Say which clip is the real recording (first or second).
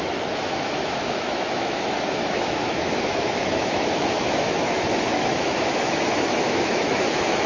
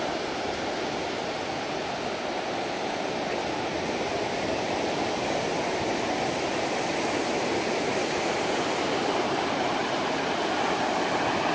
second